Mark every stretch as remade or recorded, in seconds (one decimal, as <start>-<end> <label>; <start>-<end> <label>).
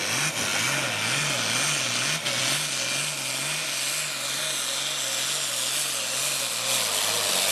0.0-3.6 recorded; 3.6-4.4 remade; 4.4-7.5 recorded